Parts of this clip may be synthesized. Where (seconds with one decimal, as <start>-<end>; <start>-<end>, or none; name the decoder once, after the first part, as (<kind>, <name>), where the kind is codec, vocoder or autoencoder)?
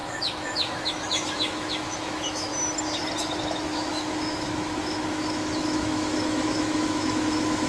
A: 0.0-2.5 (autoencoder, DAC-VAE); 3.2-7.7